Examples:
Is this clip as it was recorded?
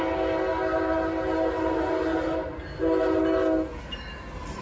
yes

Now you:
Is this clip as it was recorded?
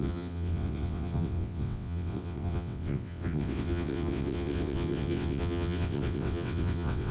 no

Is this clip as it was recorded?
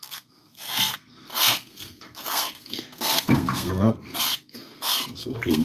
no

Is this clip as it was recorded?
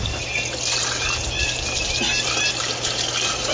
yes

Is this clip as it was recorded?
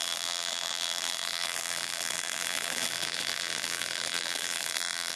no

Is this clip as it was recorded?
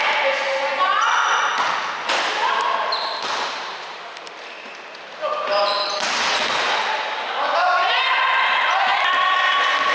yes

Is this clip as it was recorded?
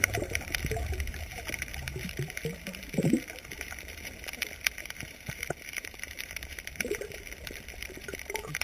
no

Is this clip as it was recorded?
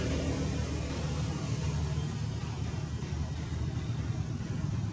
yes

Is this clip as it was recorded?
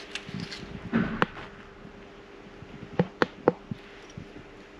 yes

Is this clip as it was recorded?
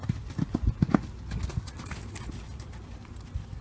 yes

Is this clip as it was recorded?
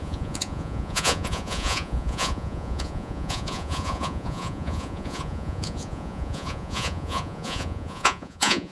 no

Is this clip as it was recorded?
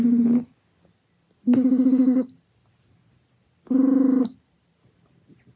yes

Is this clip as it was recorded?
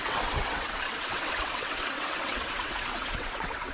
no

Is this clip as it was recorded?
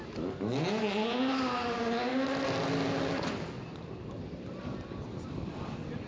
yes